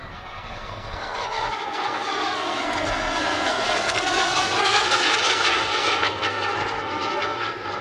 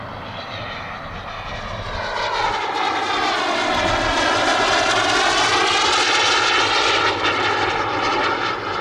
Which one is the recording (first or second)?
second